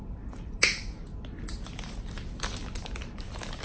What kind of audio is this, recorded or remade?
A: recorded